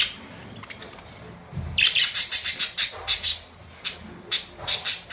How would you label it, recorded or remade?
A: recorded